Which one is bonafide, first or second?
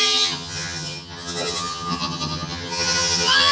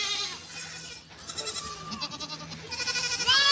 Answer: second